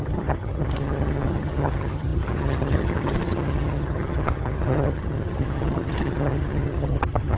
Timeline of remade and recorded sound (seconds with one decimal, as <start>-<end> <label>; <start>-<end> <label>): 0.0-7.4 remade